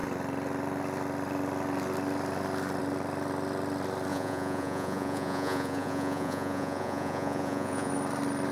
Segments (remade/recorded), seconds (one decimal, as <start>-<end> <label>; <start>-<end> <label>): 0.0-4.1 recorded; 4.1-7.9 remade; 7.9-8.5 recorded